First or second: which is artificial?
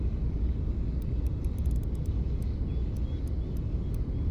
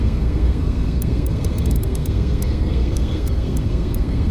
second